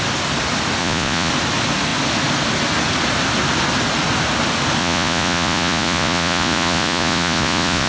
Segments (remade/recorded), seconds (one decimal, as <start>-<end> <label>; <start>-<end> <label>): 0.0-0.8 recorded; 0.8-1.3 remade; 1.3-4.8 recorded; 4.8-7.9 remade